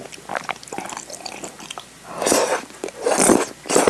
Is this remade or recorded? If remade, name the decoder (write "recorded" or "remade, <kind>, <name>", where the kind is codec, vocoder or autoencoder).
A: recorded